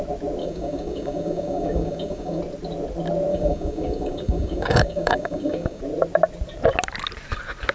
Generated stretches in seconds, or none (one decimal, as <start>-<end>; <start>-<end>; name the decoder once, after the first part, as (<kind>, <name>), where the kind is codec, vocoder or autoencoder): 0.4-2.4 (codec, DAC); 3.3-5.8

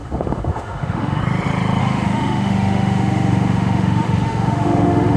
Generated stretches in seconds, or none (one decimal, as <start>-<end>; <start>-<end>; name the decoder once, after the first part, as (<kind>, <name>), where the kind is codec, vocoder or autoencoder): 0.0-1.2 (autoencoder, DAC-VAE); 1.8-5.2